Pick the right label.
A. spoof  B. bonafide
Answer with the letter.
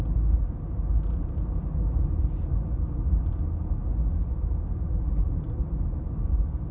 B